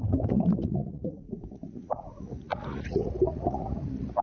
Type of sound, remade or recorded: remade